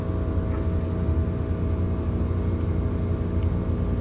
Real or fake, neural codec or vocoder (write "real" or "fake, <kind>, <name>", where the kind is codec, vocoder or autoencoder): real